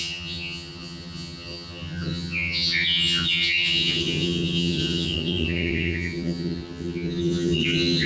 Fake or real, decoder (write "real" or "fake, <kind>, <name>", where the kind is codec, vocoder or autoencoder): fake, vocoder, HiFi-GAN